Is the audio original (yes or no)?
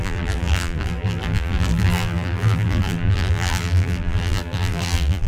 no